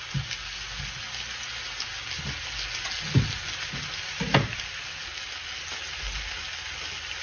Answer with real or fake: real